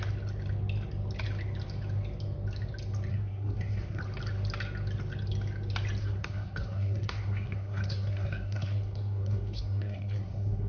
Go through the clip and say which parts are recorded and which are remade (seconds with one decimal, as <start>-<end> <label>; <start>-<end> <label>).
0.0-3.1 recorded; 3.1-4.0 remade; 4.0-6.0 recorded; 6.0-10.7 remade